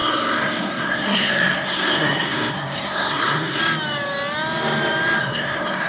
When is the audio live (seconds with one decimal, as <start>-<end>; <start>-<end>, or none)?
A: 3.6-5.2